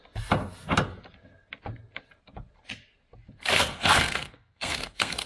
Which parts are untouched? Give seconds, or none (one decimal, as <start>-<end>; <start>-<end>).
0.0-3.5